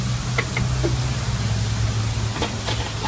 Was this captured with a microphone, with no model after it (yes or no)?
yes